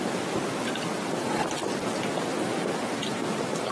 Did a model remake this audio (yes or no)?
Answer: no